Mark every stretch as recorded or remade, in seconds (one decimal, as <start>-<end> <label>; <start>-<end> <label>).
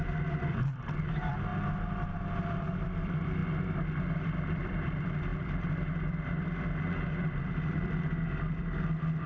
0.0-1.5 remade; 1.5-2.4 recorded; 2.4-3.4 remade; 3.4-4.1 recorded; 4.1-9.3 remade